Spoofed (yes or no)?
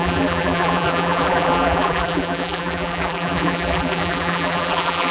yes